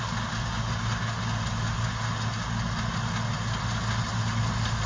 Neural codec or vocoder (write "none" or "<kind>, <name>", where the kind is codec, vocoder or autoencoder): none